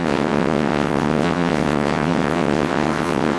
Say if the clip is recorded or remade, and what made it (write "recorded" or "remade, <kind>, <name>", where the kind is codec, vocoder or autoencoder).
remade, vocoder, WaveNeXt